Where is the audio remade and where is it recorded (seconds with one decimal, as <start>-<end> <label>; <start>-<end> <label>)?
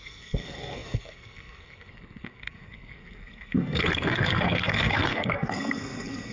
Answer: 0.0-6.3 remade